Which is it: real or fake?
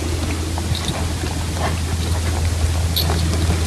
real